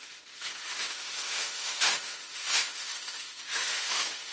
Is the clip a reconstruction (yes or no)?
yes